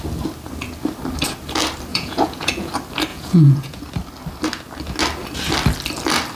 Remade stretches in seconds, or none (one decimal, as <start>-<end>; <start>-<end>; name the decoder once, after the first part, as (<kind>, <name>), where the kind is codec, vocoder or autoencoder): 1.9-2.7 (vocoder, Vocos); 3.1-3.8